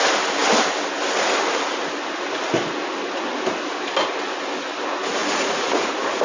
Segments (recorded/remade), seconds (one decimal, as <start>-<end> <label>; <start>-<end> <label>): 0.0-5.2 recorded; 5.2-6.2 remade